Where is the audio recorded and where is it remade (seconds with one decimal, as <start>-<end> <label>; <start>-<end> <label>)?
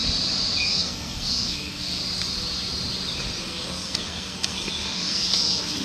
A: 0.0-0.6 recorded; 0.6-2.0 remade; 2.0-3.4 recorded; 3.4-5.8 remade